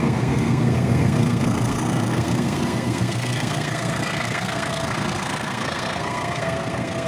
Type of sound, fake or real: fake